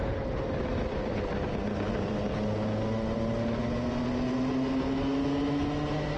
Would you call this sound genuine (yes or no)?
yes